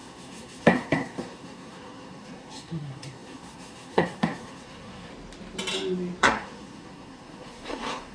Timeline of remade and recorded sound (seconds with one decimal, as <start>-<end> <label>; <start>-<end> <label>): 0.0-5.1 remade; 5.1-6.2 recorded; 6.2-8.1 remade